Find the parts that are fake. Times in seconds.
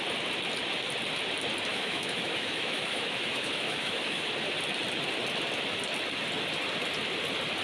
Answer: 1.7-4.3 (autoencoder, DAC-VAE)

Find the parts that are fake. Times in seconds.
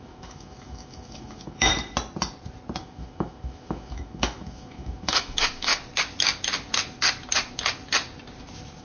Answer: 0.0-1.7 (autoencoder, DAC-VAE); 2.8-5.7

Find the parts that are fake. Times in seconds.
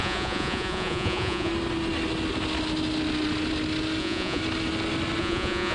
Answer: 0.0-1.5 (vocoder, Vocos); 4.0-4.4; 5.2-5.7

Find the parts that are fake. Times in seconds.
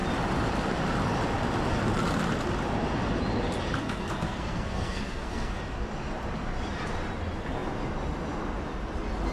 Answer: 3.8-5.6 (codec, SNAC)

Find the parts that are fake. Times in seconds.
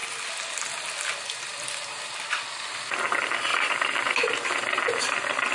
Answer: 1.5-2.5 (vocoder, BigVGAN v2); 3.5-4.2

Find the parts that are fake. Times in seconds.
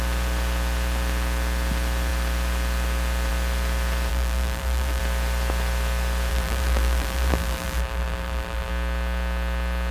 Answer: 4.1-5.0 (vocoder, BigVGAN v2); 6.3-8.7